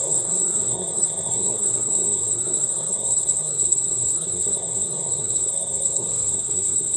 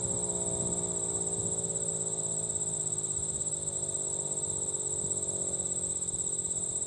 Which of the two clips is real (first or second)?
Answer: second